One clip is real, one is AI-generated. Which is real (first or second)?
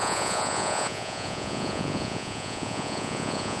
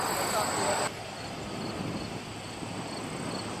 second